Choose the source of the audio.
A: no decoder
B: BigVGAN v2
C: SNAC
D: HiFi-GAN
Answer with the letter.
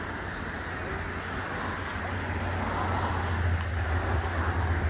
A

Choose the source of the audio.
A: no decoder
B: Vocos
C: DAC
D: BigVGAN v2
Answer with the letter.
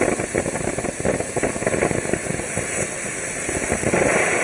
A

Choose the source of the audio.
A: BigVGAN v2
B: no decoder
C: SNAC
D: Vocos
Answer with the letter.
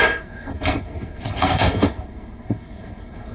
C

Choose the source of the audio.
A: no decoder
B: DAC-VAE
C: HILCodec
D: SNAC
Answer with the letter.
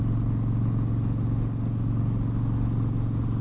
A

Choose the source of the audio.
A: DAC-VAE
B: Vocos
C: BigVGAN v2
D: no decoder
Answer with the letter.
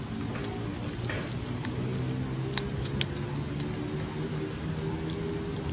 D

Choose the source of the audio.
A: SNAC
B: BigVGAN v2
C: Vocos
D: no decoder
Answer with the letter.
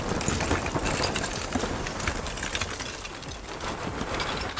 D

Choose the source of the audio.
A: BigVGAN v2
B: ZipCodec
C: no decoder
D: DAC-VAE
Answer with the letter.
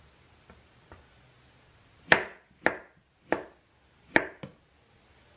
C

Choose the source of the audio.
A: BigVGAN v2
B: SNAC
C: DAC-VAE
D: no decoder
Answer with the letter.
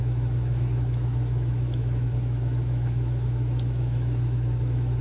C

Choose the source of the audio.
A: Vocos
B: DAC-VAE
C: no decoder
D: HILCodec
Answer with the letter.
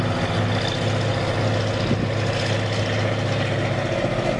C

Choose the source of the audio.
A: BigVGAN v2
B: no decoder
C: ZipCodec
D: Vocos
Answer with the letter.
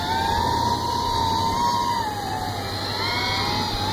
B